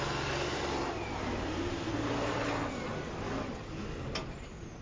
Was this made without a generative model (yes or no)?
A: yes